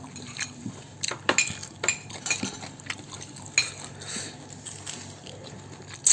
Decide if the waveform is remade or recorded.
recorded